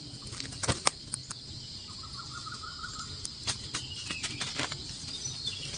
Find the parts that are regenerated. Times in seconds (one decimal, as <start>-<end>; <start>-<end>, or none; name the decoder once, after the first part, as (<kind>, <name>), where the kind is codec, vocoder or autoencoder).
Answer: none